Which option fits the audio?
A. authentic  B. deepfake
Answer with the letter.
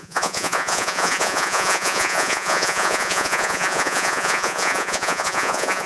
B